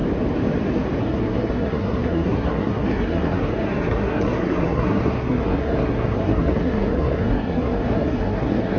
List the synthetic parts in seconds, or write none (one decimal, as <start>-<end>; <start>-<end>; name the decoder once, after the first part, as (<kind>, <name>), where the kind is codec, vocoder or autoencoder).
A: 1.0-8.8 (codec, SNAC)